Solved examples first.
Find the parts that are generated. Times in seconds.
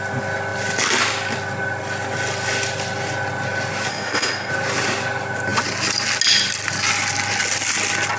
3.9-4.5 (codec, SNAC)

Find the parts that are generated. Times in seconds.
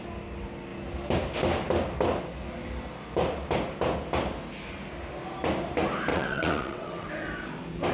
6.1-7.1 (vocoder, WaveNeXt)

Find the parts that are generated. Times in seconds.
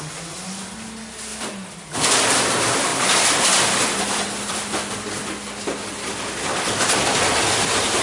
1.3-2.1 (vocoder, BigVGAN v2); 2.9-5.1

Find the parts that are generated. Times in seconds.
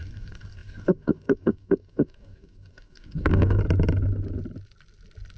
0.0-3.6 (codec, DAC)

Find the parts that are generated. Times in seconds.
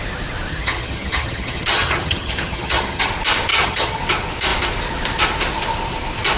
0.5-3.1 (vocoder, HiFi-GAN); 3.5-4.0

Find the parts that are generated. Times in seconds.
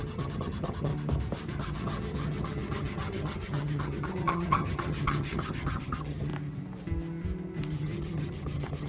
0.0-0.9 (vocoder, HiFi-GAN); 1.5-6.3; 7.7-8.9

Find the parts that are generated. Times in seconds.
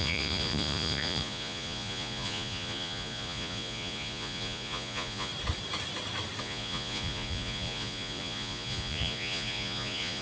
0.0-5.3 (vocoder, Vocos); 6.4-10.2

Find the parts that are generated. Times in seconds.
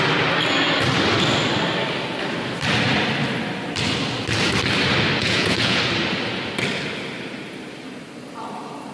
5.2-5.8 (vocoder, Vocos)